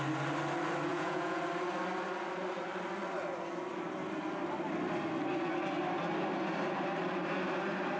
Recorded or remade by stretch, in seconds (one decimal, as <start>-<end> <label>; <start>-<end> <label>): 0.0-0.9 recorded; 0.9-1.4 remade; 1.4-8.0 recorded